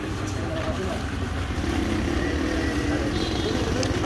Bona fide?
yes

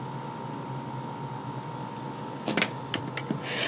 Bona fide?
yes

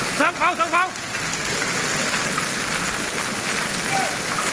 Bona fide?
yes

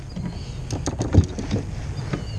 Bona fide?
yes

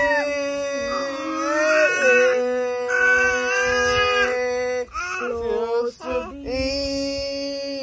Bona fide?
yes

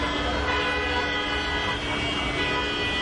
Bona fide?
yes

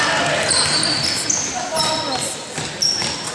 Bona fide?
yes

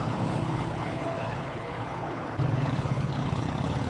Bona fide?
no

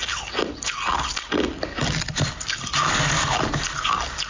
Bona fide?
yes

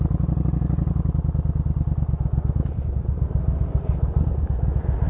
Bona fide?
yes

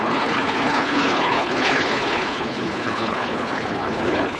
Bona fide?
no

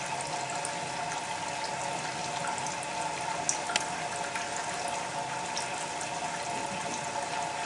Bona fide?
yes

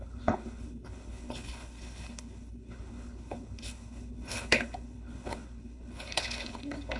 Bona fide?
no